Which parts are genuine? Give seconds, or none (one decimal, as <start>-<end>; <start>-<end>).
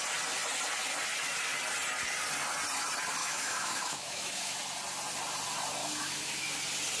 0.0-3.2; 4.6-5.8; 6.5-7.0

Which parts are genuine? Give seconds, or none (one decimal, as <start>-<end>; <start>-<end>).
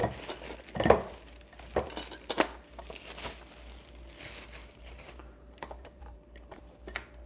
0.0-4.6; 6.6-7.3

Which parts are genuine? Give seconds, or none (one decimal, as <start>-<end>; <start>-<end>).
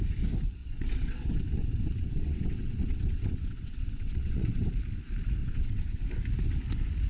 0.0-0.6; 4.7-5.4; 6.0-7.1